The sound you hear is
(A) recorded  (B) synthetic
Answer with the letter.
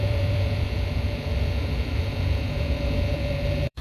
B